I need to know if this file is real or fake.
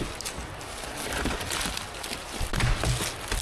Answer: real